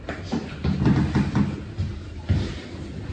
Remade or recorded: recorded